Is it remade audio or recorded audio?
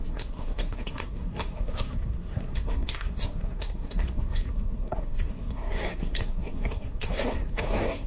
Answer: remade